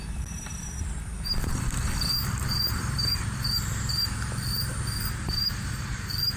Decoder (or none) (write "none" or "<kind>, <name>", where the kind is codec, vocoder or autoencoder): vocoder, BigVGAN v2